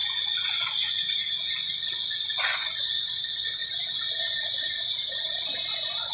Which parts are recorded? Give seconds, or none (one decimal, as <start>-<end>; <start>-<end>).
1.2-1.9; 3.6-6.1